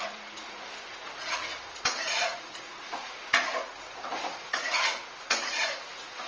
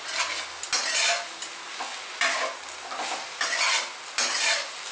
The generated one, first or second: first